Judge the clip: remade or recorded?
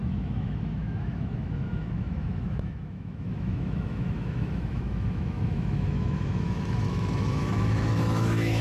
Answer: remade